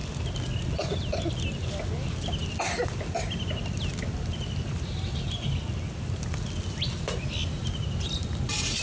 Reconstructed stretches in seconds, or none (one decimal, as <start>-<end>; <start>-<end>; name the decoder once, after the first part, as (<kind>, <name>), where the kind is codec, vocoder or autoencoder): none